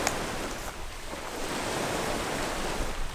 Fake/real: real